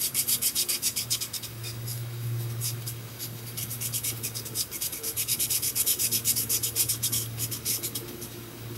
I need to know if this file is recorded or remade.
remade